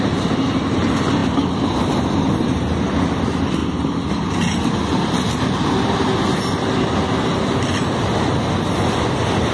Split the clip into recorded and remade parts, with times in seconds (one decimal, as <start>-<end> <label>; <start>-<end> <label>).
0.0-9.5 recorded